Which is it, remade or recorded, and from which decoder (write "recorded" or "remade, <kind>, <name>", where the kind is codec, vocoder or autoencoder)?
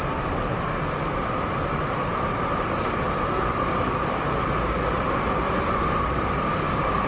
recorded